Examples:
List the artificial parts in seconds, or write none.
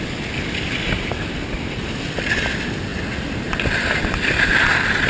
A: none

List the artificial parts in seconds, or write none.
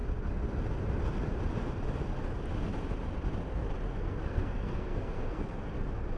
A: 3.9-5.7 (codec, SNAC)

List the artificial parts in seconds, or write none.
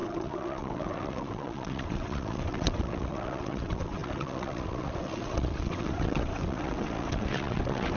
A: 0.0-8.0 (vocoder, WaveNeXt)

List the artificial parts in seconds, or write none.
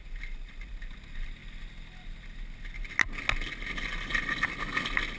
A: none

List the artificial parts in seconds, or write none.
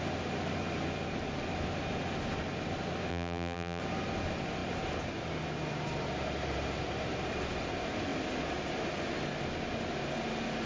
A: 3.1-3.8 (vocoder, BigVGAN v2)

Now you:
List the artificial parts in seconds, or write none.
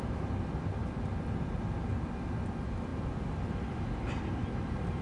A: 0.0-5.0 (vocoder, BigVGAN v2)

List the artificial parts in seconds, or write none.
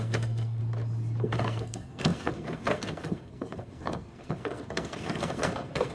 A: 0.0-0.6 (codec, SNAC); 1.2-5.9